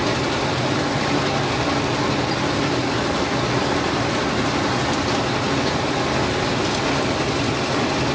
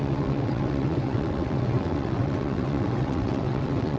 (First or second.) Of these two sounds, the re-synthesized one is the second